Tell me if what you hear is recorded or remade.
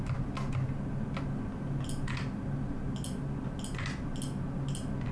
recorded